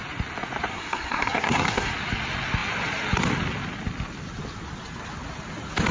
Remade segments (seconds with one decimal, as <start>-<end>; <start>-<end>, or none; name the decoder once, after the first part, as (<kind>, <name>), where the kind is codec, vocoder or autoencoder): 0.7-1.9 (codec, SNAC)